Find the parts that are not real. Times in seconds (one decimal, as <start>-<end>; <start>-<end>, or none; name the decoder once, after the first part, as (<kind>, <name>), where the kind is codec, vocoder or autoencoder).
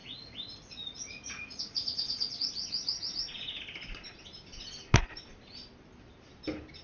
0.0-3.6 (vocoder, Vocos)